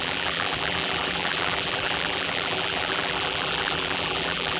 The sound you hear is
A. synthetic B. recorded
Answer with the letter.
A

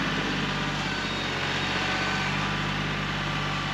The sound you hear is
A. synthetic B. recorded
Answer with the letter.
B